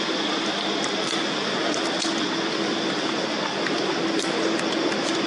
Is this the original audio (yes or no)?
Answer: yes